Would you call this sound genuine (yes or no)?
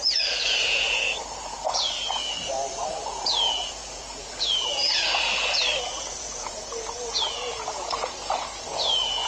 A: no